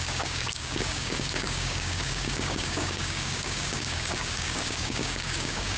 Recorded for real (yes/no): no